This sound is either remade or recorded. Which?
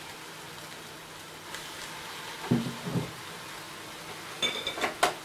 recorded